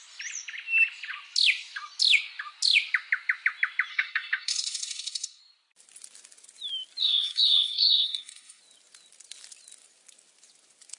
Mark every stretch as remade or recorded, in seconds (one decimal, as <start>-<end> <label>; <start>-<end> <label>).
0.0-3.9 recorded; 3.9-5.4 remade; 5.4-7.0 recorded; 7.0-8.6 remade; 8.6-11.0 recorded